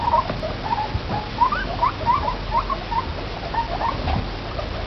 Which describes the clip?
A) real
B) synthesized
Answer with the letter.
A